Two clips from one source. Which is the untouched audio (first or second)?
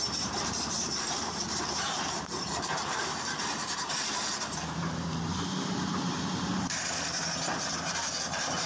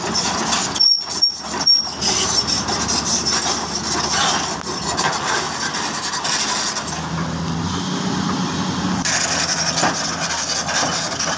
second